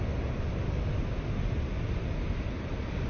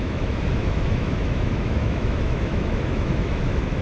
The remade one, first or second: second